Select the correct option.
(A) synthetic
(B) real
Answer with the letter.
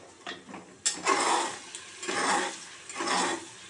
B